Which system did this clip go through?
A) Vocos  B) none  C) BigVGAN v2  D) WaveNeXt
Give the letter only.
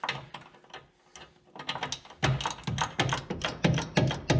B